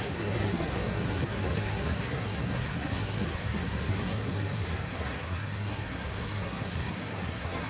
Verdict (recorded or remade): remade